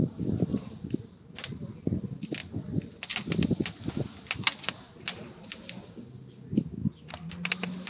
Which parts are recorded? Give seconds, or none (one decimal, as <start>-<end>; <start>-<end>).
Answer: 0.0-7.9